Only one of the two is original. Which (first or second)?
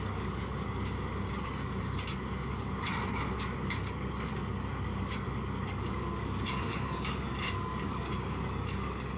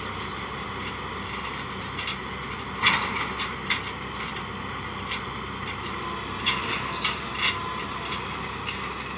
second